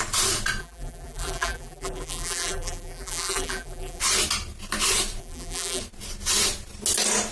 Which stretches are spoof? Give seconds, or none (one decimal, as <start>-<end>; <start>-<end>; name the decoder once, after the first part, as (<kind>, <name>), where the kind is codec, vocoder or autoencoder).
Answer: 0.6-4.0 (vocoder, BigVGAN v2); 5.2-5.8